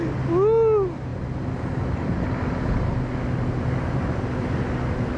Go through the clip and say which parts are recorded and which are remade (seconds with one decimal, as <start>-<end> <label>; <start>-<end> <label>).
0.0-5.2 recorded